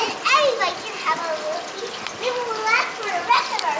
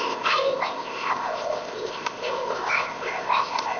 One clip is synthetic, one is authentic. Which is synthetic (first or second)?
second